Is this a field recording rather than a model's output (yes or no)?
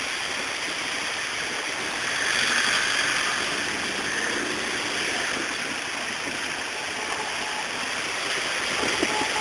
yes